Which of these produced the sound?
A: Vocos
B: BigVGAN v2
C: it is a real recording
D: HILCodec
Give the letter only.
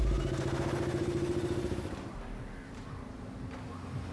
C